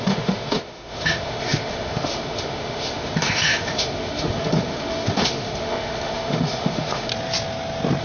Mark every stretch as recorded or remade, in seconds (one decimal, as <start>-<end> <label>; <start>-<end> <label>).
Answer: 0.0-7.1 remade; 7.1-8.0 recorded